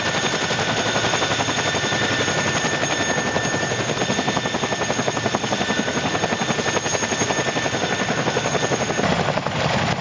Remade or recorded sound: recorded